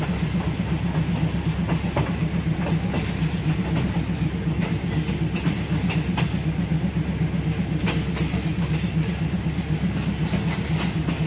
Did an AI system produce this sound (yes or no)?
no